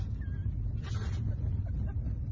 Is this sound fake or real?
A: real